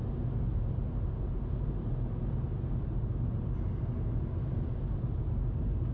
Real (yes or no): yes